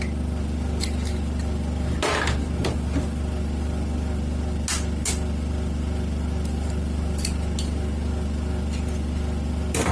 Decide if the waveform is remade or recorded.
recorded